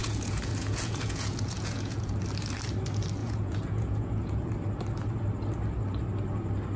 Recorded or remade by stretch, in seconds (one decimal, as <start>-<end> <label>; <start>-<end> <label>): 0.0-2.2 remade; 2.2-3.2 recorded; 3.2-4.5 remade; 4.5-6.8 recorded